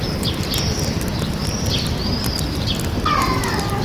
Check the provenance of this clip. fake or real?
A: real